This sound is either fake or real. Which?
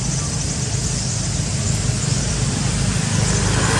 fake